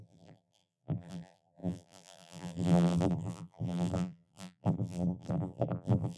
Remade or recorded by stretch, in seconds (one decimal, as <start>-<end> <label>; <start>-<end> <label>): 0.0-6.2 remade